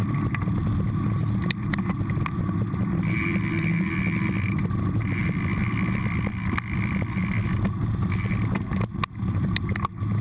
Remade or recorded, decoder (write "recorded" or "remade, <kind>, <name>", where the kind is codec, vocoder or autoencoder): recorded